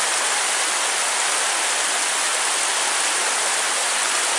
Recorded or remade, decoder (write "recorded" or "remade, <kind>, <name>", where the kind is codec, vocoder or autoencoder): recorded